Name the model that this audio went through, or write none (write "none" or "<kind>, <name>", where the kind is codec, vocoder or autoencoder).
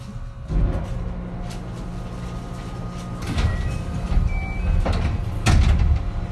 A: none